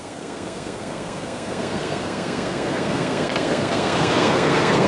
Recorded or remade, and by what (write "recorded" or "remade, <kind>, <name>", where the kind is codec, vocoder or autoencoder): remade, codec, SNAC